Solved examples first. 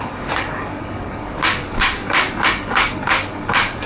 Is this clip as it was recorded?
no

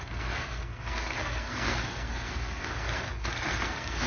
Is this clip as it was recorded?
no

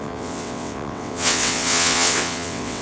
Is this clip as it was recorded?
no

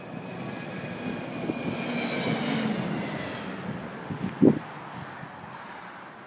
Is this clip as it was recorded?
yes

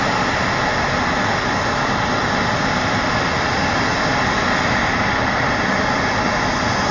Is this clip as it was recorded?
yes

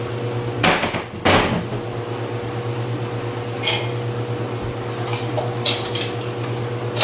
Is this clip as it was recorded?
yes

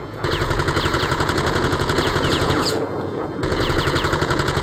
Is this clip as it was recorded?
no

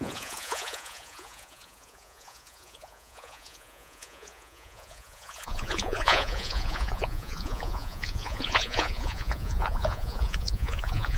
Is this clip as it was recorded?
no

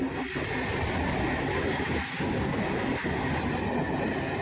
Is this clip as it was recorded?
yes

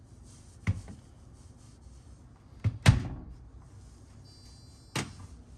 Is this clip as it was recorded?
yes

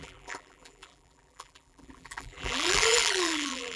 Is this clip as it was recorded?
no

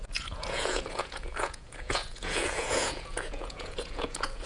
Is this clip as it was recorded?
no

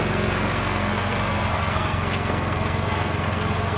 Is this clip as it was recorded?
no